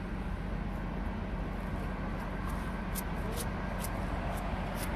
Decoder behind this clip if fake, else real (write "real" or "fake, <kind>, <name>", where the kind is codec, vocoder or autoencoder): real